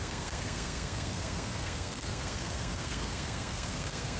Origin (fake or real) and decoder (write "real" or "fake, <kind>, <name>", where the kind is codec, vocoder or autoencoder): fake, codec, SNAC